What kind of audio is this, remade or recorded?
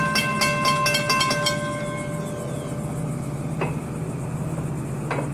recorded